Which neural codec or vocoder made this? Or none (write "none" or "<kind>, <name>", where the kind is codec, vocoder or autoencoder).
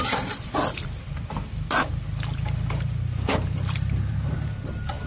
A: vocoder, BigVGAN v2